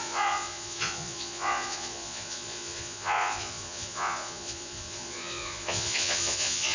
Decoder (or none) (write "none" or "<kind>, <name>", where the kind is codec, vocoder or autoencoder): vocoder, Vocos